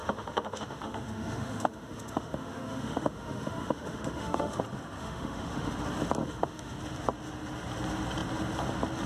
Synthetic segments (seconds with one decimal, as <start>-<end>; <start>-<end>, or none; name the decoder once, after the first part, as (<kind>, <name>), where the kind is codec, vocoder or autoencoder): 0.0-4.6 (autoencoder, DAC-VAE); 5.0-5.7; 6.2-6.8

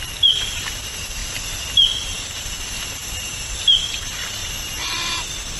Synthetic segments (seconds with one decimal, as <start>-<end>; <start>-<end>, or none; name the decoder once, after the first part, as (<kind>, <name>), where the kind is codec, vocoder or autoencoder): none

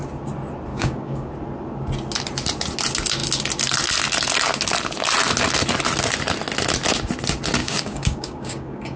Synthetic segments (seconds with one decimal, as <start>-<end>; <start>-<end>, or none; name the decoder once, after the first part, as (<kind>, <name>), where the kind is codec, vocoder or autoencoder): 0.7-1.3 (codec, DAC); 7.6-9.0

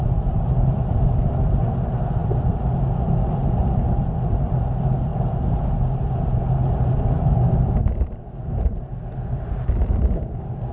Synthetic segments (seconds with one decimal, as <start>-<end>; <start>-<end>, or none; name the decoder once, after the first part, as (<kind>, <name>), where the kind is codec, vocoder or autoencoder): none

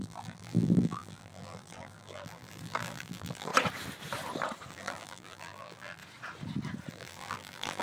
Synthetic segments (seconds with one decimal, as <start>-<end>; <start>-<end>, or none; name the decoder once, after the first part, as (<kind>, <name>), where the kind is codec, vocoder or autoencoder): 0.0-3.5 (vocoder, BigVGAN v2); 4.7-6.0; 6.9-7.8

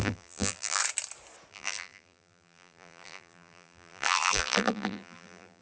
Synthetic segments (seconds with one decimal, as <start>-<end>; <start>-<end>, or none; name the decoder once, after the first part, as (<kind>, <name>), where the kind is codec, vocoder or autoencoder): 0.0-0.8 (vocoder, BigVGAN v2); 1.5-5.6